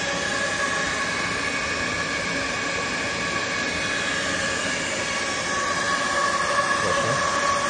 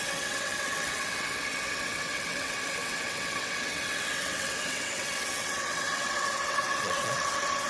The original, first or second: first